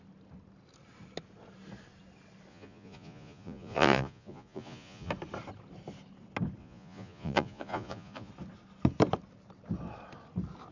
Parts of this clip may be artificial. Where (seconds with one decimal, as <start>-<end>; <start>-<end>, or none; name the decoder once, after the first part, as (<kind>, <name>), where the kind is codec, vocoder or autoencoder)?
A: 2.5-5.1 (vocoder, Vocos); 6.6-8.3